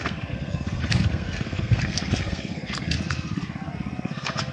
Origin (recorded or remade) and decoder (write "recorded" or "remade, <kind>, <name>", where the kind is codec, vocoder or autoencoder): remade, codec, SNAC